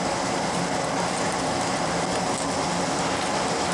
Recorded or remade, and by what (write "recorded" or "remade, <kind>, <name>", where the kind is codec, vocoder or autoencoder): recorded